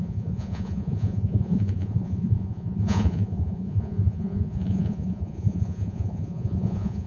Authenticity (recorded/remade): remade